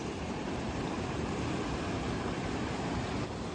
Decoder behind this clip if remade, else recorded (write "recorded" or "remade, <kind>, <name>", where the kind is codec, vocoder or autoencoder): recorded